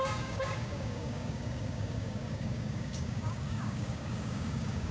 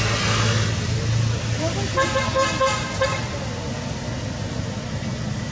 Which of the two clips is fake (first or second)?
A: first